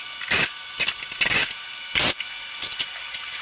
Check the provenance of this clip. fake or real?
real